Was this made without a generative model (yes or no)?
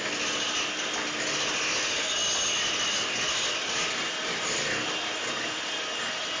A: yes